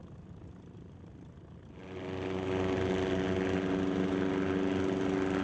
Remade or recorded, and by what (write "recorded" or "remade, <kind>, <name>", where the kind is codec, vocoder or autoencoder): recorded